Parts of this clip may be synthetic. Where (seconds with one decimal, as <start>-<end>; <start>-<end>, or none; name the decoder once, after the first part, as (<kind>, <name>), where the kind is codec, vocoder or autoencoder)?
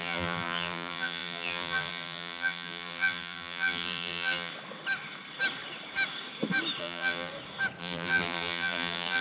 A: 0.0-4.5 (vocoder, BigVGAN v2); 6.8-7.3; 7.8-9.2